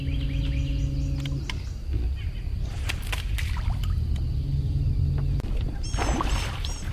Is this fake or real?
real